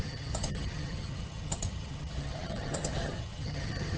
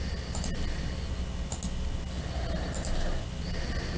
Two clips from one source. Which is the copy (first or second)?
first